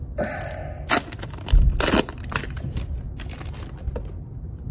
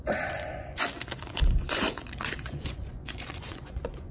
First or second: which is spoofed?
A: second